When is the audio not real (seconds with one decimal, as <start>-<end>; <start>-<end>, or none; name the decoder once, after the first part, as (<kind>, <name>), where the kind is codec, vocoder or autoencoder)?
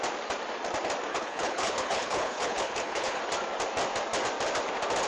1.1-3.2 (codec, HILCodec)